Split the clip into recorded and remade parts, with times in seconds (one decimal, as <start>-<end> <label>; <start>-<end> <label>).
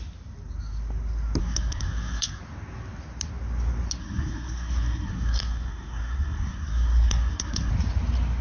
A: 0.0-1.4 recorded; 1.4-2.4 remade; 2.4-4.0 recorded; 4.0-7.7 remade; 7.7-8.4 recorded